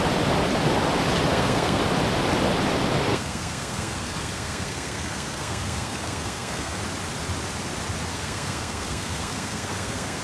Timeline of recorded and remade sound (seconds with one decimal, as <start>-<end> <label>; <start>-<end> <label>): 0.0-1.3 recorded; 1.3-1.8 remade; 1.8-3.1 recorded; 3.1-6.8 remade; 6.8-8.1 recorded; 8.1-10.2 remade

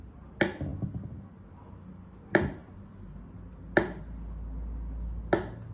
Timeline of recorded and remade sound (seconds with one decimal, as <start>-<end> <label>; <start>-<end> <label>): 0.0-5.7 recorded

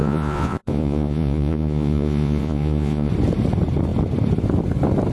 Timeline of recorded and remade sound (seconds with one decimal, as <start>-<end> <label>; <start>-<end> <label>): 0.0-3.1 remade; 3.1-5.1 recorded